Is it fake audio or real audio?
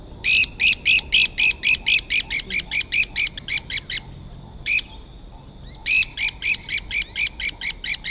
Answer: real